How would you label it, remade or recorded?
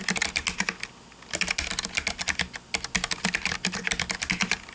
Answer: recorded